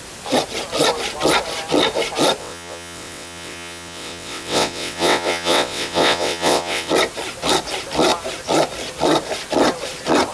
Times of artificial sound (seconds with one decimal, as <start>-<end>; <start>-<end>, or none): 2.4-6.9